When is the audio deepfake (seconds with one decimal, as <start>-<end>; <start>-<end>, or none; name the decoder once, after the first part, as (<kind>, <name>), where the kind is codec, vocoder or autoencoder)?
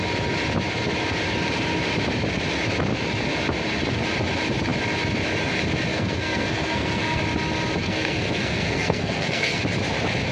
5.9-7.2 (codec, SNAC); 7.8-9.6